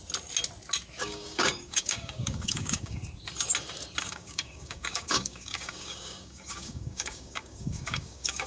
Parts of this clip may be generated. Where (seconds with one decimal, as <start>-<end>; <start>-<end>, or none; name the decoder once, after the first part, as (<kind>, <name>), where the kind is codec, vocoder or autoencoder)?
1.0-3.0 (codec, DAC); 4.0-8.5